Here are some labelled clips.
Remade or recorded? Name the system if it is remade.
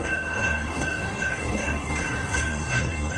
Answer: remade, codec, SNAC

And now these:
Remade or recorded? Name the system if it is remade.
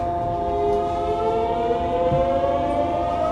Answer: recorded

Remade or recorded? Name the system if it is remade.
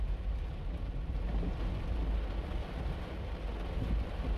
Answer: recorded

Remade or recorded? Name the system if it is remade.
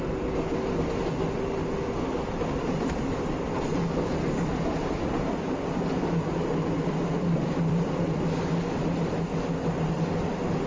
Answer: recorded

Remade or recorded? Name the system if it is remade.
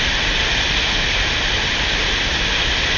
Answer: recorded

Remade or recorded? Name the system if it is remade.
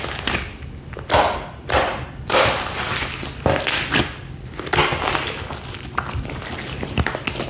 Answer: recorded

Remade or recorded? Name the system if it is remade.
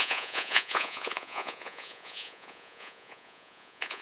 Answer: remade, vocoder, Vocos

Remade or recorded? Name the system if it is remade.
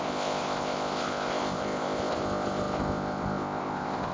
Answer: remade, codec, ZipCodec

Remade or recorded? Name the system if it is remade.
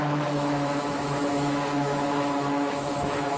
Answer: remade, autoencoder, DAC-VAE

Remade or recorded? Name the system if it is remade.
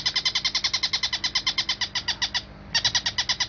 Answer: recorded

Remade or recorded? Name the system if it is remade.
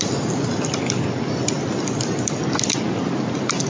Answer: recorded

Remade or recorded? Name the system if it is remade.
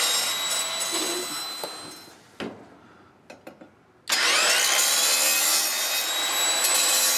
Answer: recorded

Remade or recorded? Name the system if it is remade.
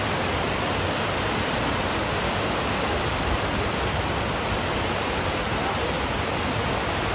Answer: recorded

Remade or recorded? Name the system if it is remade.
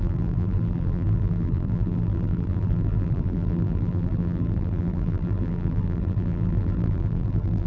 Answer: remade, vocoder, BigVGAN v2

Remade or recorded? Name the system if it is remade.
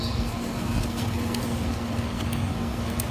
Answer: remade, codec, SNAC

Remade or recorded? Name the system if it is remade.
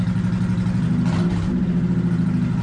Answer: recorded